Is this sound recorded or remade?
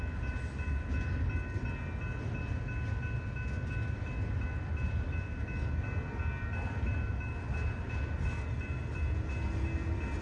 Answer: recorded